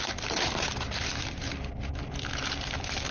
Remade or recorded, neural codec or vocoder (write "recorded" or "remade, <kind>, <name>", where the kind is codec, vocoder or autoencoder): remade, vocoder, BigVGAN v2